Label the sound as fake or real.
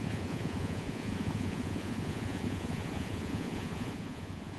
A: fake